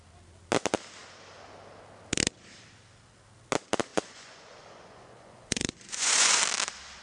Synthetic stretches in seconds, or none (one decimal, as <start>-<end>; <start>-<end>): 3.9-6.4